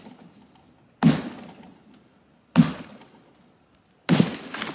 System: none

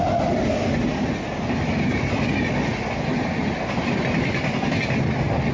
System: none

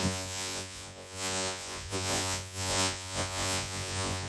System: vocoder, Vocos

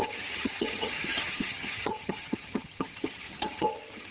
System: vocoder, HiFi-GAN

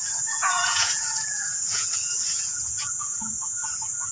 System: vocoder, Vocos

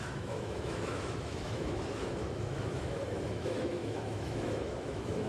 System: autoencoder, DAC-VAE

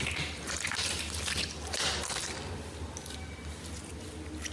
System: none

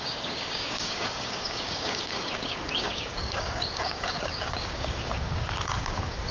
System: codec, DAC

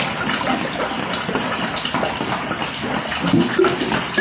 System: none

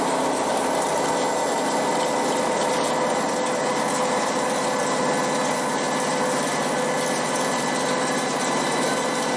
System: none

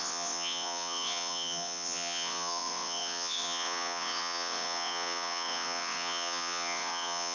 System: vocoder, WaveNeXt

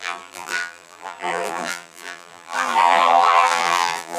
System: vocoder, BigVGAN v2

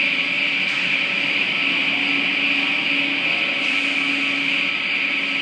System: none